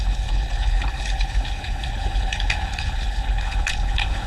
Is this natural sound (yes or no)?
no